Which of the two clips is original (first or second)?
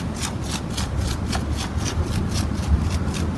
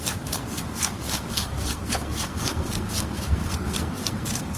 first